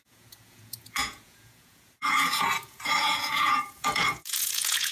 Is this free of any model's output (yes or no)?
no